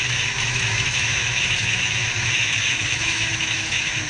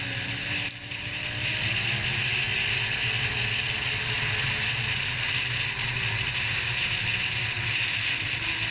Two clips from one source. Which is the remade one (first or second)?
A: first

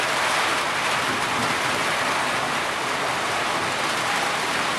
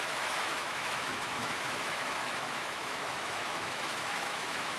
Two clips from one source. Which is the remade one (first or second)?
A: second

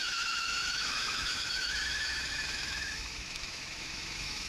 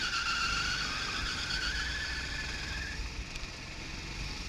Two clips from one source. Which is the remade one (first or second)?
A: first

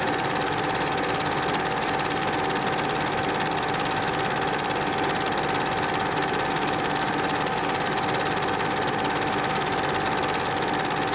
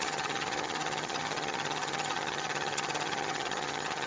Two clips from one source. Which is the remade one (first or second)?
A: second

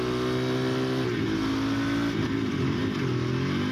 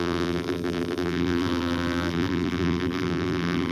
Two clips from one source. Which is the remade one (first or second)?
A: second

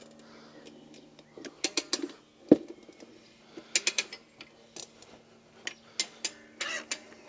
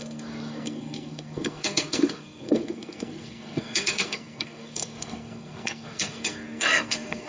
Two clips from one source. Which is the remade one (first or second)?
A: second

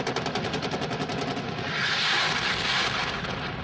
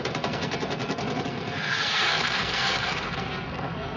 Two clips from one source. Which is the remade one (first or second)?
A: second